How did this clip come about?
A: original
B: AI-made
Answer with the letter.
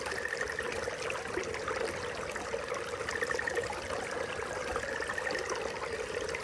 A